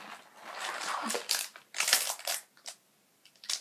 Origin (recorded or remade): recorded